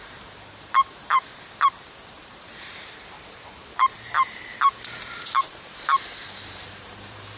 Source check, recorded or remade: remade